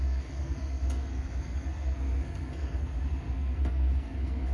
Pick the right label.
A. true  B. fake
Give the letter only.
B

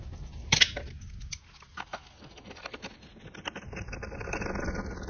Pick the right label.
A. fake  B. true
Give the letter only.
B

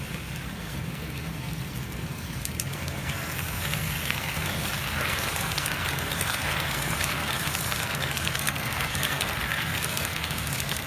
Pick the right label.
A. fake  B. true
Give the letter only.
A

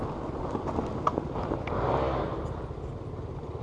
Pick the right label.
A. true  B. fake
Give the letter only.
A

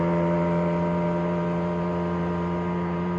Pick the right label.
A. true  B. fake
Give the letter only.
B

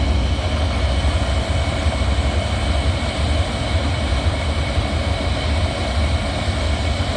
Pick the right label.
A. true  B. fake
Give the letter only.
A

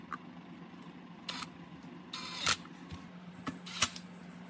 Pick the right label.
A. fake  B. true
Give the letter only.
B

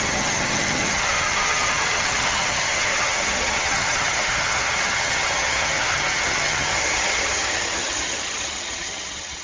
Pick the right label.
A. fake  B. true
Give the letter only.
A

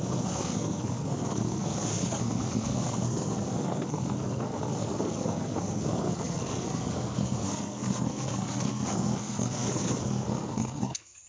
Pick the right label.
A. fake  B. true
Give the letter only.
A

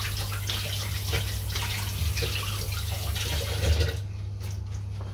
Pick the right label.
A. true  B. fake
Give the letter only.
A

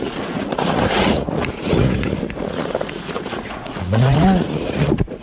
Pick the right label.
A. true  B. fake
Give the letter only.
B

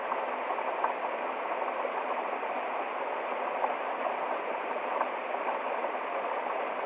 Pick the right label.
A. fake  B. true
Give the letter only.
B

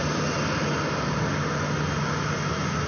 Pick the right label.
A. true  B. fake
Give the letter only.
A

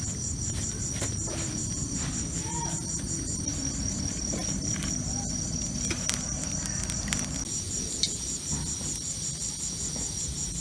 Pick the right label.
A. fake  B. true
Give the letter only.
B